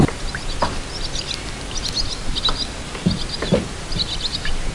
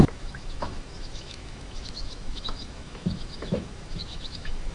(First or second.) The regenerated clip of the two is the second